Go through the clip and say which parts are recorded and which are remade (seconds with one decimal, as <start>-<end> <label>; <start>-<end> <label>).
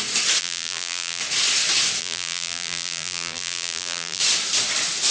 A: 0.0-0.4 recorded; 0.4-1.2 remade; 1.2-2.0 recorded; 2.0-4.2 remade; 4.2-5.1 recorded